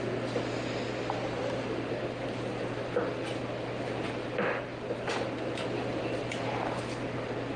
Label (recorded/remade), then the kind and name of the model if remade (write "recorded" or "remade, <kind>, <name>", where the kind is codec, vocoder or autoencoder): recorded